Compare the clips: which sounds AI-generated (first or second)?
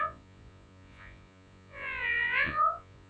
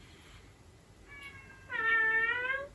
first